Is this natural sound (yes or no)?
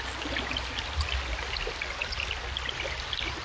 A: yes